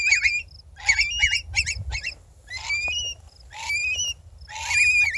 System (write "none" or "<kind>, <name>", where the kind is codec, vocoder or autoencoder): none